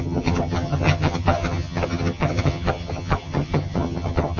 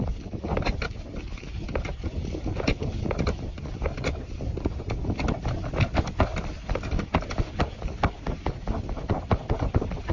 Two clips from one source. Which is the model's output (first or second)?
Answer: first